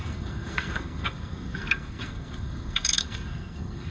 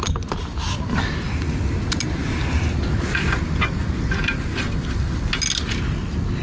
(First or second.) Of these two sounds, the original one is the second